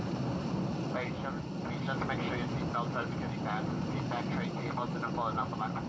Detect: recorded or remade recorded